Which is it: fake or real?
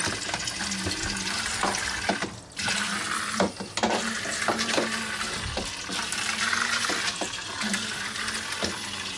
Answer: real